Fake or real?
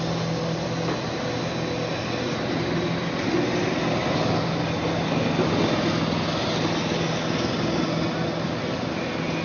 real